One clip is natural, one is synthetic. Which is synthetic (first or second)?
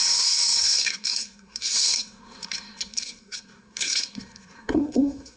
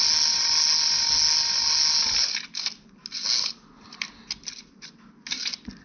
first